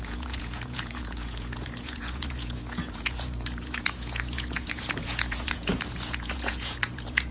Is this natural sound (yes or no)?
no